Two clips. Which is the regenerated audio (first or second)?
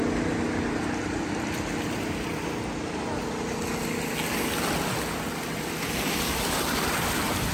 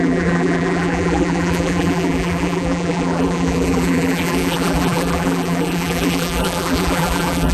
second